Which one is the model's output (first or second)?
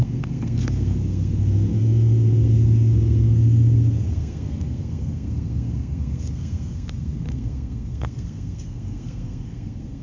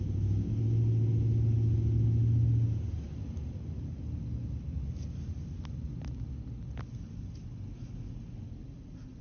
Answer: first